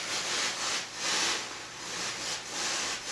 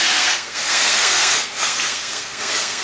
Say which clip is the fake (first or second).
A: second